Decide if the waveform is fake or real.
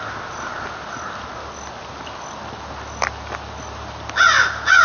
real